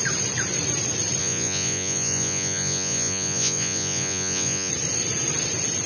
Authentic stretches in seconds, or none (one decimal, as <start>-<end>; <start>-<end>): 0.0-1.2; 4.7-5.9